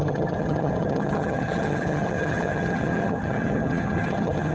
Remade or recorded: remade